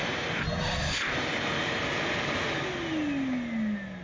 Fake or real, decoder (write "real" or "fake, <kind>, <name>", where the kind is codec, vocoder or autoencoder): real